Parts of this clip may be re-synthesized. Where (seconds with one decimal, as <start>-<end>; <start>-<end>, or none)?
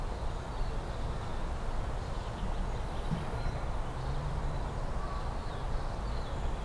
none